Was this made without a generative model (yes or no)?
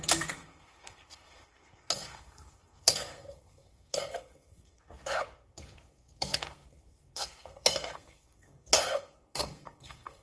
no